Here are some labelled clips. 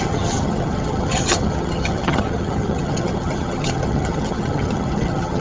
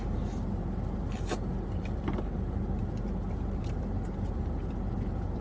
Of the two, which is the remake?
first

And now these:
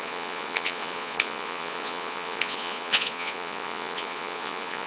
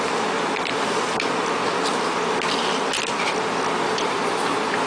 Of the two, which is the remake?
first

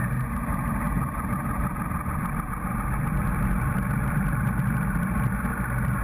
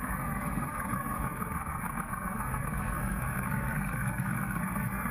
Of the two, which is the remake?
second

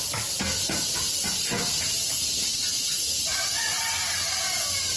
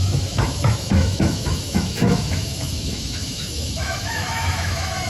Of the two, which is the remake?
second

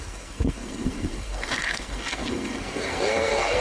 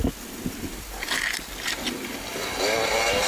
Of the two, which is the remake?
first